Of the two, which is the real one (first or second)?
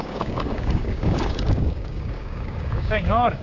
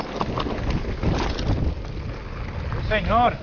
second